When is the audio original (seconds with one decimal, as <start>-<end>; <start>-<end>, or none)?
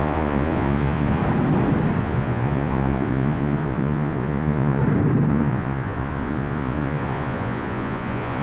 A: 1.2-2.0; 4.8-5.3